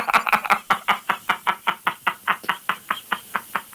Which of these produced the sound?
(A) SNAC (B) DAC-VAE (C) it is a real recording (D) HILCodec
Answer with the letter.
C